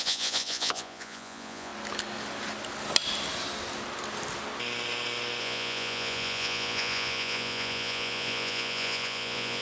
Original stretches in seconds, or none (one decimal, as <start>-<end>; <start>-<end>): 1.7-5.4